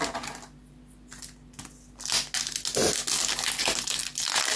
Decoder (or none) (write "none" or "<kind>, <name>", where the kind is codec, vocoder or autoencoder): none